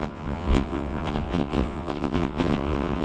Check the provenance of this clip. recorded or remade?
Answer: remade